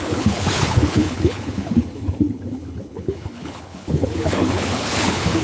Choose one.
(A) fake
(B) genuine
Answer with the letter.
A